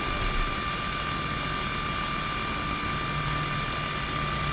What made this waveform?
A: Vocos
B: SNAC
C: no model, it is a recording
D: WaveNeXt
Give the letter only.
C